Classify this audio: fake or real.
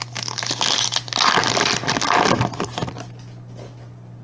real